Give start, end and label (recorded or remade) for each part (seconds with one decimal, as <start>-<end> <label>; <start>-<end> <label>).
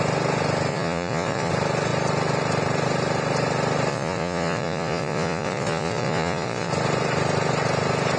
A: 0.0-0.7 recorded; 0.7-1.5 remade; 1.5-3.9 recorded; 3.9-6.7 remade; 6.7-8.2 recorded